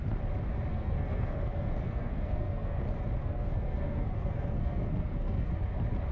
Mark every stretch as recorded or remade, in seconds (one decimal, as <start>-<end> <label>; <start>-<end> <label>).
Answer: 0.0-0.7 recorded; 0.7-2.8 remade; 2.8-3.2 recorded; 3.2-5.5 remade; 5.5-6.1 recorded